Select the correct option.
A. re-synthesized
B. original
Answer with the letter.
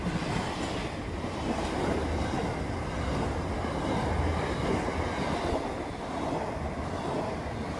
B